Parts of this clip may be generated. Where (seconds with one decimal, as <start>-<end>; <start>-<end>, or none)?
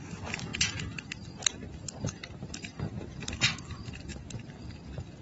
none